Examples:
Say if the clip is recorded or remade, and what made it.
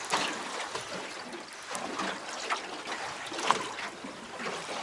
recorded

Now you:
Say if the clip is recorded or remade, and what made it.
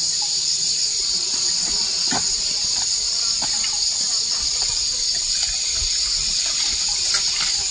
recorded